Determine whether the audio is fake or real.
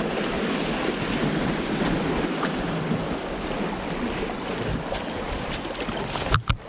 real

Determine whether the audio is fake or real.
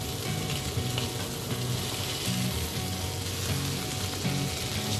real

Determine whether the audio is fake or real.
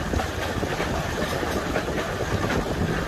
real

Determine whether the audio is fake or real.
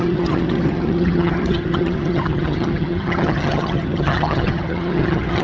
fake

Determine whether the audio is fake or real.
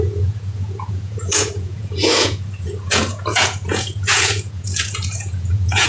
fake